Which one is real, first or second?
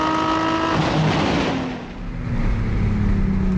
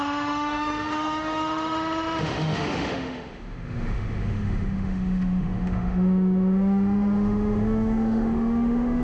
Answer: first